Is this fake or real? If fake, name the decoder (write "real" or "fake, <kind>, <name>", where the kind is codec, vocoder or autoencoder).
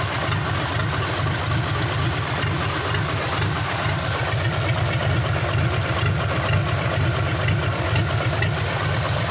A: real